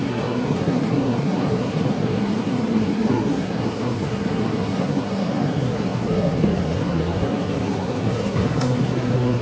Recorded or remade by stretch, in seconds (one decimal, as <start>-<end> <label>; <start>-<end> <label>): 0.0-9.4 remade